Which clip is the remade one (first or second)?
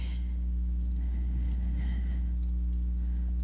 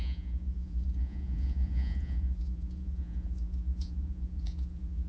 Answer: second